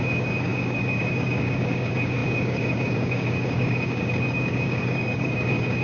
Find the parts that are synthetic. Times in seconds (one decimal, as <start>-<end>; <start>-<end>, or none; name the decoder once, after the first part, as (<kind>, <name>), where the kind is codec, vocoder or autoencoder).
0.0-5.8 (codec, DAC)